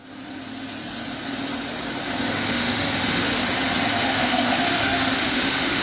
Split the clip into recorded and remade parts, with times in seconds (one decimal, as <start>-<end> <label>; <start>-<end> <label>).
0.0-2.3 recorded; 2.3-3.3 remade; 3.3-4.0 recorded; 4.0-5.8 remade